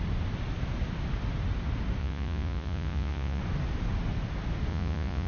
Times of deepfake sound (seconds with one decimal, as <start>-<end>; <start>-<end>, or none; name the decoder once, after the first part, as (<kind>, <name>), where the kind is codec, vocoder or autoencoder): 2.0-3.4 (vocoder, Vocos); 4.7-5.3

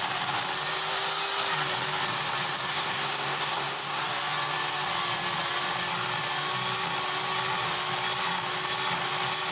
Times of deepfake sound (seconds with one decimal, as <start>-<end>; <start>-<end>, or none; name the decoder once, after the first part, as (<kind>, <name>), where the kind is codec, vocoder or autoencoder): 2.7-4.0 (codec, SNAC)